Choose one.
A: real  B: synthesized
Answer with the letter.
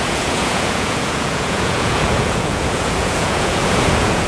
B